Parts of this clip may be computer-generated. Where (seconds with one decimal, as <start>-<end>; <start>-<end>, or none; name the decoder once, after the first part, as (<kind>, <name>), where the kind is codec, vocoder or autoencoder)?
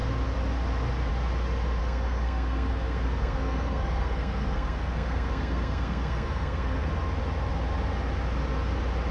1.8-6.9 (codec, SNAC)